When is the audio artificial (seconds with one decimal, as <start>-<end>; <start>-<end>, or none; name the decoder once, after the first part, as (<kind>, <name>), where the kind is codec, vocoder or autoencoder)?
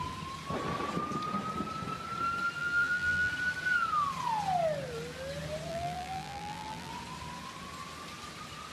2.6-3.3 (vocoder, BigVGAN v2); 5.7-6.9